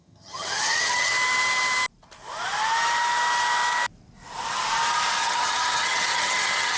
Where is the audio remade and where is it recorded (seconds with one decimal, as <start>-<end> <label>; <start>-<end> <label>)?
0.0-1.1 remade; 1.1-5.2 recorded; 5.2-6.8 remade